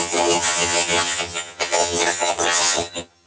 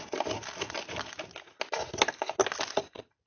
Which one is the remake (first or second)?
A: first